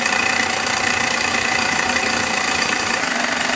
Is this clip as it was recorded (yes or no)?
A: no